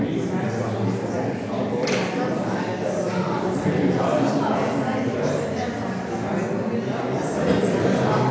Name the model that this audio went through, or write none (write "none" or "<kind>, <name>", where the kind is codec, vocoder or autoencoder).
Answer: none